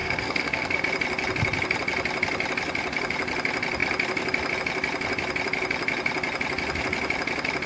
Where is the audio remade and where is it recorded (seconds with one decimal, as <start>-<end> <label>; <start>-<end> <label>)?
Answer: 0.0-0.8 remade; 0.8-7.7 recorded

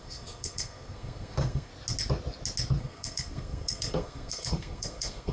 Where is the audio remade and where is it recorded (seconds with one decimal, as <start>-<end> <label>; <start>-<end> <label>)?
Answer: 0.0-1.7 remade; 1.7-2.8 recorded; 2.8-5.3 remade

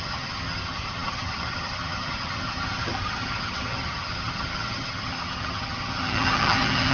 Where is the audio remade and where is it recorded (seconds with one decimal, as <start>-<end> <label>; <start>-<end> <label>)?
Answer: 0.0-6.9 remade

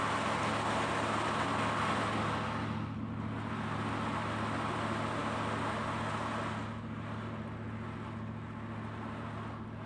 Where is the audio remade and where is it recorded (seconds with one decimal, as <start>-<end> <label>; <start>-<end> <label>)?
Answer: 0.0-9.9 recorded

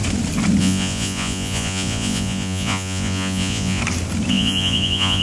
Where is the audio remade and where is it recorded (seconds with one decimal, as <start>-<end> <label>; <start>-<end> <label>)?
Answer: 0.0-0.6 recorded; 0.6-3.8 remade; 3.8-4.3 recorded; 4.3-5.2 remade